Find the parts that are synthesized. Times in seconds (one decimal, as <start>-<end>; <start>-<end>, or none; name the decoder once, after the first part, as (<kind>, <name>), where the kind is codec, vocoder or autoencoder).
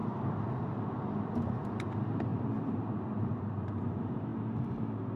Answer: 0.0-4.3 (vocoder, BigVGAN v2)